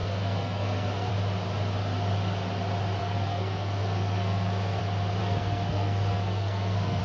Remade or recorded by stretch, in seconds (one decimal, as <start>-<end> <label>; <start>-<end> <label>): 0.0-1.1 remade; 1.1-3.0 recorded; 3.0-4.8 remade; 4.8-5.2 recorded; 5.2-7.0 remade